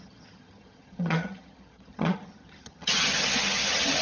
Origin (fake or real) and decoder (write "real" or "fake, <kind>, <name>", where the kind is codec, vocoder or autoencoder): fake, vocoder, HiFi-GAN